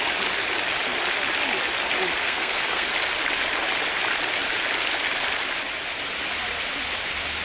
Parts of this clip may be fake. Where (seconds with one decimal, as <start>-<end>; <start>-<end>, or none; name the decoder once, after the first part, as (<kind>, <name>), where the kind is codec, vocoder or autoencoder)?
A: 2.2-2.9 (codec, SNAC)